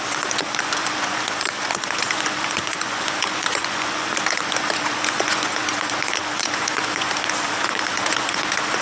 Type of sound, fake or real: fake